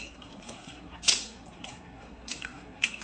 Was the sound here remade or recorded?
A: remade